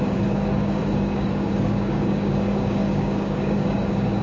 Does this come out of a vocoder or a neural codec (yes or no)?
yes